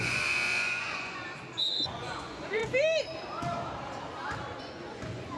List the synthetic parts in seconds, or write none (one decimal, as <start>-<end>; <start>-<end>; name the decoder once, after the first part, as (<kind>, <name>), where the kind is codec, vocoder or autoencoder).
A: 0.0-1.2 (vocoder, Vocos); 1.7-2.6; 4.6-5.4

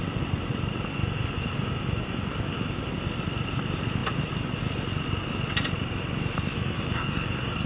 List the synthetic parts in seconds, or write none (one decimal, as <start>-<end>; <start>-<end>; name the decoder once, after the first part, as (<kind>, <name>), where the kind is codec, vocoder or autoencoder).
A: 0.9-2.9 (codec, DAC); 6.5-7.7

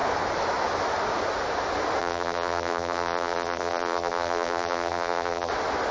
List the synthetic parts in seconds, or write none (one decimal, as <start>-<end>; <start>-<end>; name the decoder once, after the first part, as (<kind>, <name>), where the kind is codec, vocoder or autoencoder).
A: 2.0-5.5 (vocoder, BigVGAN v2)

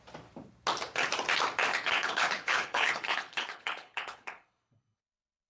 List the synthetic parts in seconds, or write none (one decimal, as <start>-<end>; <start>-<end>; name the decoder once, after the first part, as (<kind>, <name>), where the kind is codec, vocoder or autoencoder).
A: 1.7-5.0 (codec, HILCodec)

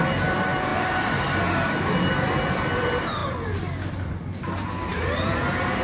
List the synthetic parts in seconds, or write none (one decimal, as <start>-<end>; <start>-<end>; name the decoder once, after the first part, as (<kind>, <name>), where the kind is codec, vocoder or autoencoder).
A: none